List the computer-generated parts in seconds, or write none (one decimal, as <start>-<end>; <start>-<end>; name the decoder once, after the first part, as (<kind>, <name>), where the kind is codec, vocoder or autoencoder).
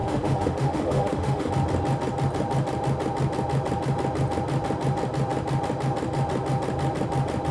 0.0-1.5 (autoencoder, DAC-VAE)